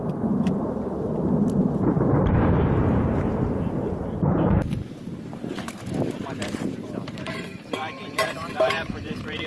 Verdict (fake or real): fake